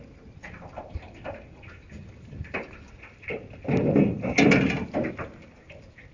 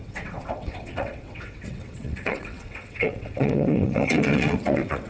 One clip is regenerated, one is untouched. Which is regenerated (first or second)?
second